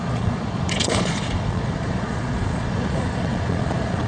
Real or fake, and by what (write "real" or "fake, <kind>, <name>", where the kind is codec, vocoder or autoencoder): fake, vocoder, Vocos